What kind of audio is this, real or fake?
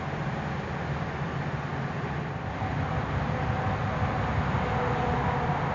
real